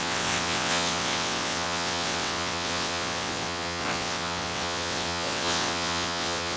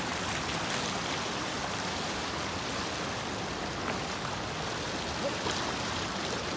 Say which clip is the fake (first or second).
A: first